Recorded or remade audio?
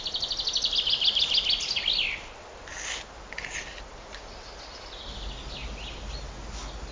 recorded